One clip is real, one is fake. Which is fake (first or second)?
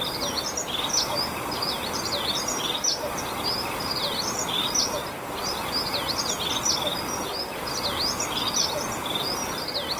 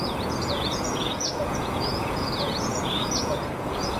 second